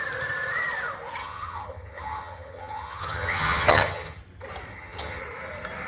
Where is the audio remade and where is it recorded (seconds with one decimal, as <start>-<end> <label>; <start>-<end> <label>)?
0.0-1.2 recorded; 1.2-4.2 remade; 4.2-4.7 recorded; 4.7-5.2 remade; 5.2-5.9 recorded